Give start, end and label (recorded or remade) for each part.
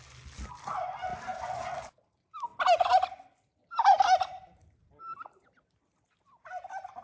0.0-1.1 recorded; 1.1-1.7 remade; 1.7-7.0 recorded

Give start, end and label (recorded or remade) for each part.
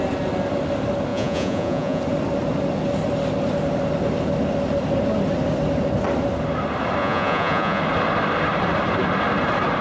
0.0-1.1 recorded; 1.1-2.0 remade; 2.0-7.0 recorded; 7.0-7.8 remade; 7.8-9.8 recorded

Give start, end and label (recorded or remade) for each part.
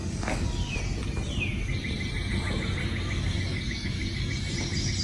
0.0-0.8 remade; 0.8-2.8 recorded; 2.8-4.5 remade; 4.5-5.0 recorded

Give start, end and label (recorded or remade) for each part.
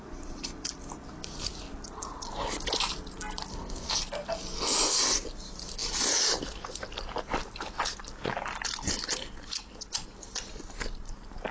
0.0-3.5 recorded; 3.5-4.0 remade; 4.0-11.5 recorded